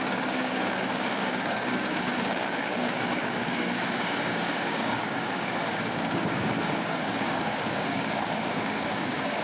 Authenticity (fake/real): fake